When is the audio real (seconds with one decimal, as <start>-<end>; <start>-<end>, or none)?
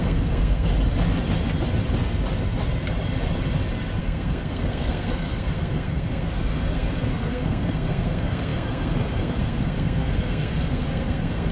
0.7-4.0